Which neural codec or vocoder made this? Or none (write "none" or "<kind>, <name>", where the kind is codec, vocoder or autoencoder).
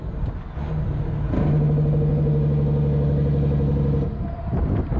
none